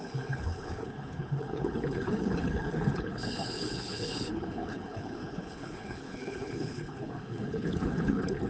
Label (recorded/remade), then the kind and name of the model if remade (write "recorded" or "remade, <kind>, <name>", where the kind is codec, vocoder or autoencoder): remade, codec, HILCodec